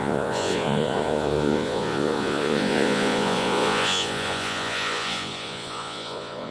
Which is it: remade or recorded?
remade